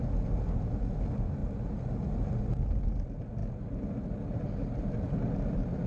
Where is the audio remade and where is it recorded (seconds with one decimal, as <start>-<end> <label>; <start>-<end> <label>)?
0.0-5.9 recorded